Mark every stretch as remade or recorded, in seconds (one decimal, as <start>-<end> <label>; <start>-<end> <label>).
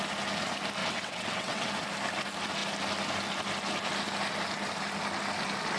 0.0-0.8 recorded; 0.8-1.7 remade; 1.7-5.8 recorded